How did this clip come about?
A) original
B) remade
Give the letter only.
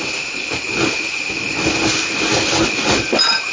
A